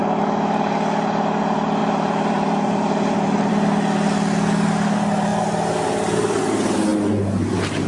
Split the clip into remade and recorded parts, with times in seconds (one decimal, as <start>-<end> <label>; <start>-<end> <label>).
0.0-1.8 recorded; 1.8-3.5 remade; 3.5-7.9 recorded